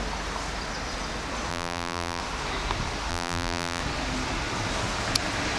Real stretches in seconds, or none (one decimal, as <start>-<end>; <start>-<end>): 0.0-1.5; 2.2-3.1; 3.8-5.6